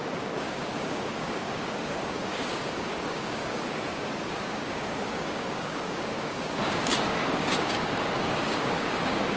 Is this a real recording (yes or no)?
no